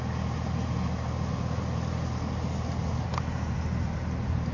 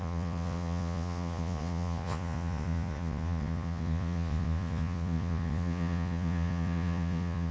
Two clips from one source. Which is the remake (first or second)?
second